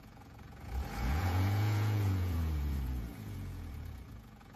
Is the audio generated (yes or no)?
yes